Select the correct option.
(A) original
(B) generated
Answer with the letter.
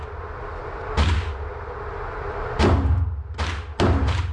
A